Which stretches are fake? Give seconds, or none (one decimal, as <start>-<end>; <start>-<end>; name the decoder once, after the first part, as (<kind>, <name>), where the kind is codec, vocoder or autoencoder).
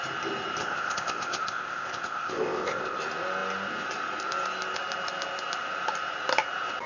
0.6-3.0 (codec, ZipCodec)